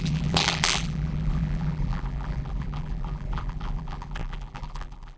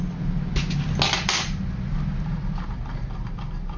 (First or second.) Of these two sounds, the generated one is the first